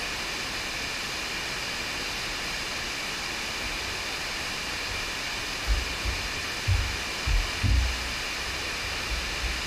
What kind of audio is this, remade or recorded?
recorded